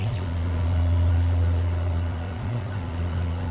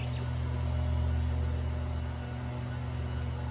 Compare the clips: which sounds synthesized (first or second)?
first